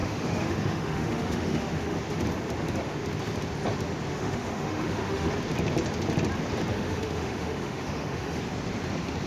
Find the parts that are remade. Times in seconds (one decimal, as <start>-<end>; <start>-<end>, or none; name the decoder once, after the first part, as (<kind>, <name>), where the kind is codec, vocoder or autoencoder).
0.0-2.0 (autoencoder, DAC-VAE); 4.1-5.3; 6.7-8.4